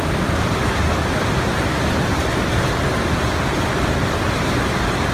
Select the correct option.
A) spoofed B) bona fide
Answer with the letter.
B